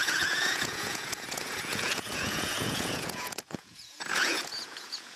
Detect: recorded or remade remade